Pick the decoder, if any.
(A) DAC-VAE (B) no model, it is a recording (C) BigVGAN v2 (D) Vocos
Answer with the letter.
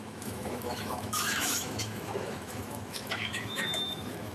A